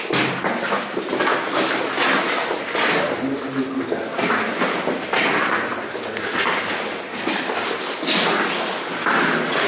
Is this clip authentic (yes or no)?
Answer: yes